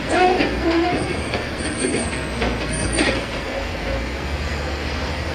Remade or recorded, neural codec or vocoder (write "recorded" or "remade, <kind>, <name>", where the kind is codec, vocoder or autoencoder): remade, codec, SNAC